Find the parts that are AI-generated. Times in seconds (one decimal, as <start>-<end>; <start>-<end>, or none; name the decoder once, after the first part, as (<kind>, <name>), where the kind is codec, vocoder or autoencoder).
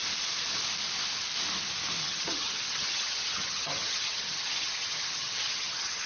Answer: 2.0-6.1 (vocoder, HiFi-GAN)